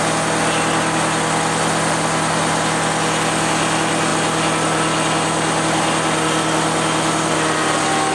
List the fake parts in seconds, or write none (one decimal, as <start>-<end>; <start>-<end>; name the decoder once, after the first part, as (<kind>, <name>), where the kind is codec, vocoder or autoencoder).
none